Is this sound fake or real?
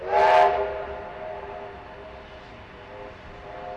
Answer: real